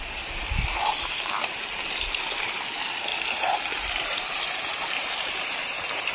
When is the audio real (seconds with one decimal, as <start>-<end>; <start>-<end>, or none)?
0.0-0.9; 2.6-3.1